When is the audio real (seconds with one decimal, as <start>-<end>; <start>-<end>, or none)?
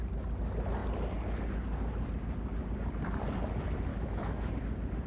0.0-3.9; 4.5-5.1